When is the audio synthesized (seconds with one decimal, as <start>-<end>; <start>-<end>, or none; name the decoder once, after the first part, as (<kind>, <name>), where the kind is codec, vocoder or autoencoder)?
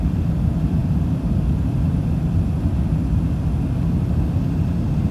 none